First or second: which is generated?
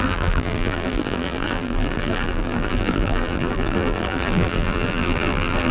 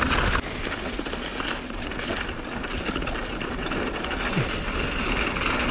first